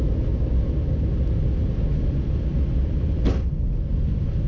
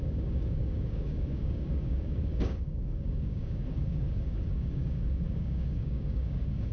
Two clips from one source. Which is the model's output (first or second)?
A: second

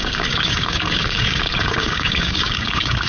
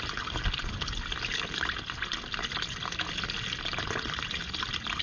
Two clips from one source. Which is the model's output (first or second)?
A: first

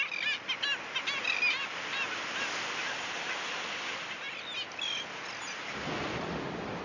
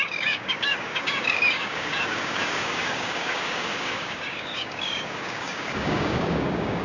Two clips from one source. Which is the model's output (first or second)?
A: second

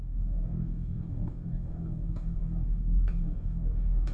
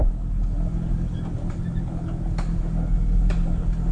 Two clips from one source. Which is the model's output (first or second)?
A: first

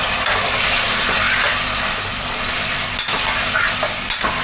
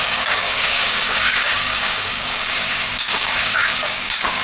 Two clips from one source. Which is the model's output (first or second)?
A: second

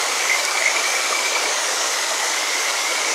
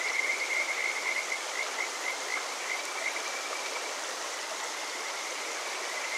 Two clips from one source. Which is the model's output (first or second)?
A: first